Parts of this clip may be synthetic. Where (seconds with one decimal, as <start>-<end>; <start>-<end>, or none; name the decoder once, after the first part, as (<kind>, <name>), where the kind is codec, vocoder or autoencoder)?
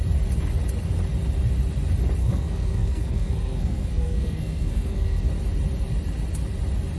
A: 2.2-5.3 (codec, SNAC)